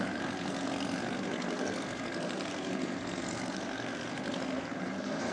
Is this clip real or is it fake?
fake